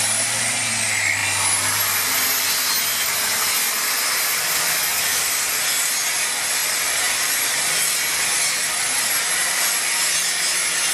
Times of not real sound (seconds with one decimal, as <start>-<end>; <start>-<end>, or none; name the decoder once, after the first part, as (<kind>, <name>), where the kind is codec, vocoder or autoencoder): none

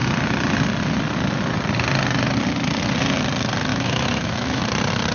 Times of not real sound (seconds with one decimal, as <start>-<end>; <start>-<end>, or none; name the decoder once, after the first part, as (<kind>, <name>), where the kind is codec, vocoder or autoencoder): 3.7-4.6 (autoencoder, DAC-VAE)

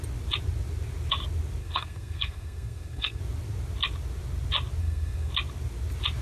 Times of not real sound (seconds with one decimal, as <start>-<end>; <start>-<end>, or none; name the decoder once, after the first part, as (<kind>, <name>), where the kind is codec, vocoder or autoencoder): 1.6-3.2 (codec, SNAC); 4.8-5.3

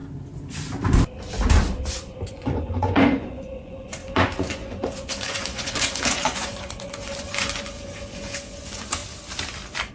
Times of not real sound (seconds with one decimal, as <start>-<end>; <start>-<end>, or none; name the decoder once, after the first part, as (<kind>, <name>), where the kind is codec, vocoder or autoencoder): 2.3-9.0 (vocoder, Vocos)

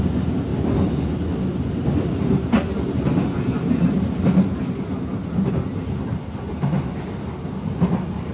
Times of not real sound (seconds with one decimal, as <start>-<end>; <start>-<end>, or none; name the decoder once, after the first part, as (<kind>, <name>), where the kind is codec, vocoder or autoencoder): none

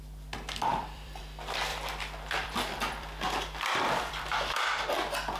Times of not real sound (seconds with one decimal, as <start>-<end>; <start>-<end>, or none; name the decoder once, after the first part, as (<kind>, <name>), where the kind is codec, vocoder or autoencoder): 0.7-1.2 (vocoder, BigVGAN v2); 1.7-4.9

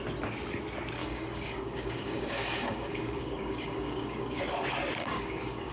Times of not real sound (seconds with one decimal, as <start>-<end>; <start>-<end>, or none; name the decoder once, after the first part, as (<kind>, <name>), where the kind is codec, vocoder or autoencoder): 1.0-4.4 (codec, DAC); 5.0-5.7